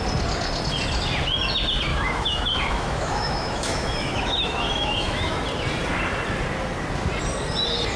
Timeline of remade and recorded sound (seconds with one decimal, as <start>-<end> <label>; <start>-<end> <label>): 0.0-1.9 recorded; 1.9-5.3 remade; 5.3-8.0 recorded